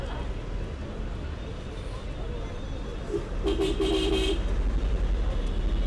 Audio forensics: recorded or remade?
recorded